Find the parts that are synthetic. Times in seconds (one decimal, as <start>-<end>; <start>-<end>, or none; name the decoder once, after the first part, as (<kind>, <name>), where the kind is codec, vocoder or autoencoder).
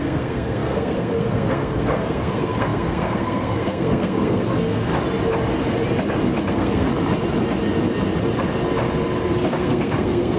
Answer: 0.0-4.9 (codec, SNAC); 6.5-6.9; 9.5-10.4